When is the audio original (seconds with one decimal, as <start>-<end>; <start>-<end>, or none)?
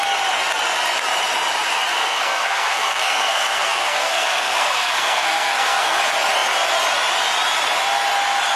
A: 0.0-1.9; 6.0-8.6